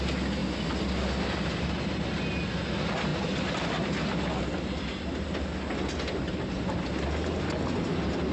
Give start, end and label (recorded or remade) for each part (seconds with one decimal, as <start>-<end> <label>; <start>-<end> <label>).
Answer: 0.0-0.4 recorded; 0.4-1.6 remade; 1.6-8.3 recorded